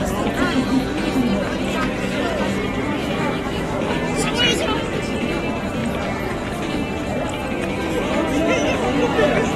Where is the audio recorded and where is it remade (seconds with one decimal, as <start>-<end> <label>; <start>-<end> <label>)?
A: 0.0-3.0 recorded; 3.0-3.9 remade; 3.9-9.6 recorded